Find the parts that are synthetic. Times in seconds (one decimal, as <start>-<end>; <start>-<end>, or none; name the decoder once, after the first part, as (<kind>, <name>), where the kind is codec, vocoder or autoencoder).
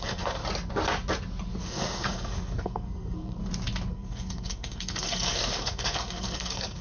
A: 0.0-0.4 (codec, SNAC); 1.6-3.4; 3.9-6.8